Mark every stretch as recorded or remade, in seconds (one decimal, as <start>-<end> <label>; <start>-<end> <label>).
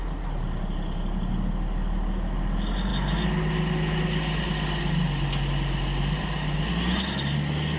0.0-7.8 recorded